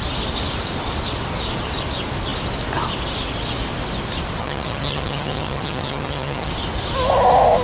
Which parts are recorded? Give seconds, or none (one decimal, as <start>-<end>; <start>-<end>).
0.0-4.4; 6.5-7.6